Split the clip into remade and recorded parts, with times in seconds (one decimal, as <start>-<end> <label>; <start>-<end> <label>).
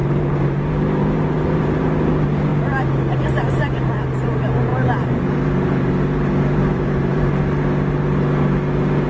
0.0-2.1 remade; 2.1-4.7 recorded; 4.7-7.4 remade; 7.4-9.1 recorded